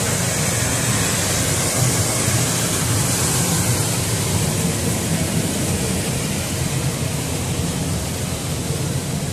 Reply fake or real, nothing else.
real